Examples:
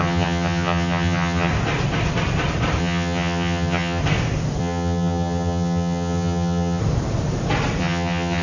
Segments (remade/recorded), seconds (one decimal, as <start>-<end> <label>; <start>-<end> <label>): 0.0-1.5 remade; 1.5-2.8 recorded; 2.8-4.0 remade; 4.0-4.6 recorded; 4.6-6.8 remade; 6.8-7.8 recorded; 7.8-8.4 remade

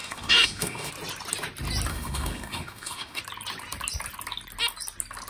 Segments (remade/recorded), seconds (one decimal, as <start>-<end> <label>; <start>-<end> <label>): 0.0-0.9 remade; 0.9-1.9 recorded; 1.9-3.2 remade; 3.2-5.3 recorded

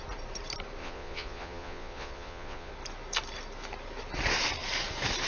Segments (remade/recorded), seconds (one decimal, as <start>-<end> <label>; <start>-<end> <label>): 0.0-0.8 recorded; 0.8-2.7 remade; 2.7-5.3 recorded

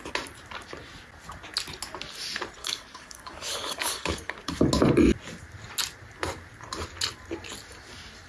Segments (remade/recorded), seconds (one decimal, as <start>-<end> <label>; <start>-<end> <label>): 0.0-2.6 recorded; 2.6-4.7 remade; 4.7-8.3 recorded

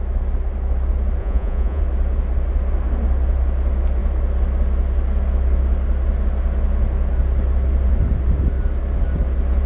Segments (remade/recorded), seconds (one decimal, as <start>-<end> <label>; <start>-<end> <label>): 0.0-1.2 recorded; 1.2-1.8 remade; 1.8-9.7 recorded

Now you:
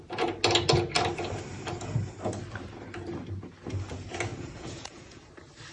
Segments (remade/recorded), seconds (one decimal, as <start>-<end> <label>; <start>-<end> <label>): 0.0-4.3 recorded; 4.3-5.3 remade; 5.3-5.7 recorded